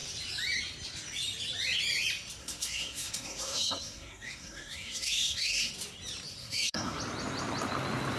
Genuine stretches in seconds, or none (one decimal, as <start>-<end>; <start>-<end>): 0.0-2.4; 5.7-6.4; 7.0-8.2